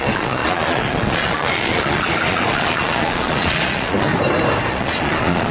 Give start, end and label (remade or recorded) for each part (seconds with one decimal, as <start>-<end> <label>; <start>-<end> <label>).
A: 0.0-4.1 remade; 4.1-4.7 recorded; 4.7-5.5 remade